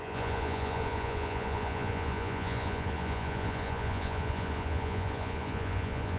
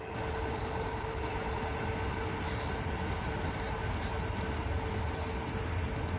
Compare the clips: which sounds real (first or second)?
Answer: second